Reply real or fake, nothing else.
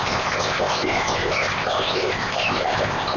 fake